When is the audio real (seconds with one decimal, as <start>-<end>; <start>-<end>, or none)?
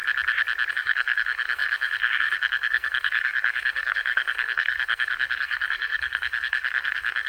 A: 0.0-0.7